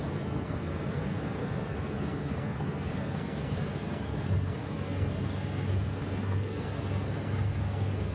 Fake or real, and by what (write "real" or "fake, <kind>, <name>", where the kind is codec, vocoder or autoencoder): fake, codec, SNAC